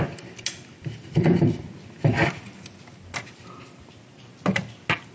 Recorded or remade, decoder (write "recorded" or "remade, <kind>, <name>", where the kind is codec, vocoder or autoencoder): recorded